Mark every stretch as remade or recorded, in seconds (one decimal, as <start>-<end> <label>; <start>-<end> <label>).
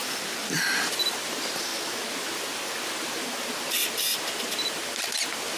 0.0-5.6 recorded